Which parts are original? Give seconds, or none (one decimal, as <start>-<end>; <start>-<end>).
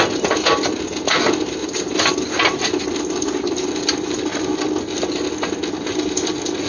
0.0-1.6; 4.6-6.7